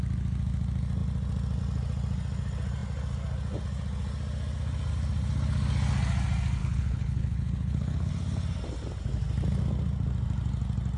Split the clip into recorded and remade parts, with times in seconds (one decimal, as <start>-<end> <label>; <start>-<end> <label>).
0.0-6.6 recorded; 6.6-8.1 remade; 8.1-11.0 recorded

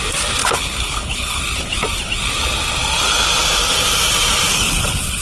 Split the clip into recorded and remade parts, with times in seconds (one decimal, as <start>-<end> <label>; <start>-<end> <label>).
0.0-0.4 recorded; 0.4-1.4 remade; 1.4-4.5 recorded; 4.5-5.2 remade

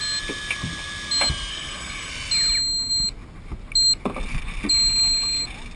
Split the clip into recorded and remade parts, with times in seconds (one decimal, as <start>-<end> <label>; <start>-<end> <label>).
0.0-1.5 recorded; 1.5-2.1 remade; 2.1-5.8 recorded

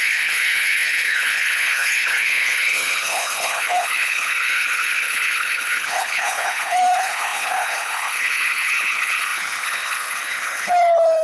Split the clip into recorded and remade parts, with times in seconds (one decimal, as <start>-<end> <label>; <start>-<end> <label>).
0.0-11.2 remade

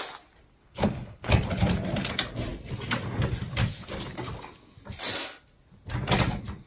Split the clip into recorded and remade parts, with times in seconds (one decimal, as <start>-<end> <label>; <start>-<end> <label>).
0.0-0.6 recorded; 0.6-1.3 remade; 1.3-6.7 recorded

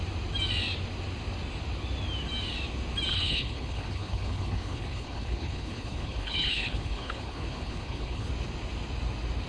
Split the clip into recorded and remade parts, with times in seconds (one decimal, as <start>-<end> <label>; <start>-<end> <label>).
0.0-3.1 recorded; 3.1-8.3 remade; 8.3-9.5 recorded